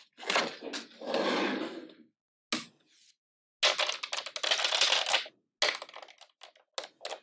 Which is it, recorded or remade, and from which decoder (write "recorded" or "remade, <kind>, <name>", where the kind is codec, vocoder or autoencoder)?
recorded